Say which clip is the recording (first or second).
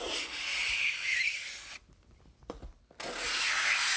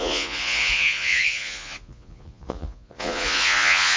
first